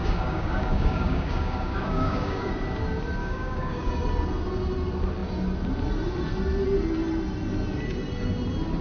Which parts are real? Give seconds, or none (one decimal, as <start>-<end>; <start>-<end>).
2.5-3.2; 3.9-8.8